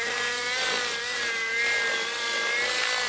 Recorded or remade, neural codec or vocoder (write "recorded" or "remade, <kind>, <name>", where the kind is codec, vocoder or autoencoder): recorded